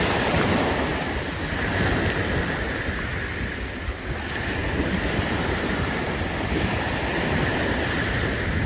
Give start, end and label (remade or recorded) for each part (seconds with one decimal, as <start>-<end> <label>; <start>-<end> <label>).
0.0-8.7 recorded